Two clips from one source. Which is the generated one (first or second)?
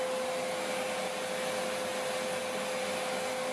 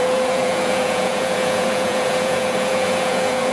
second